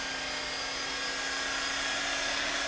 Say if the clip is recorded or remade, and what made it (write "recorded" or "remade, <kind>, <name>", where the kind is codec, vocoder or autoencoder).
recorded